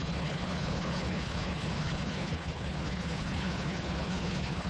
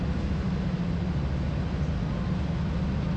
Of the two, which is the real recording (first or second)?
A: second